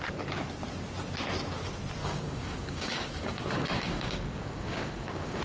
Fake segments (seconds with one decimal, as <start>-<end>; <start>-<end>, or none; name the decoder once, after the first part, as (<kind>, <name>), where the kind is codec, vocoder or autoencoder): 2.0-5.4 (codec, DAC)